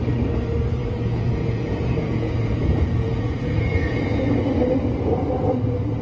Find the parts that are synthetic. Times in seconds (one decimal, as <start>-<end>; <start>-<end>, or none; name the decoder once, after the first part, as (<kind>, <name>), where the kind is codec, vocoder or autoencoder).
0.8-4.4 (vocoder, Vocos)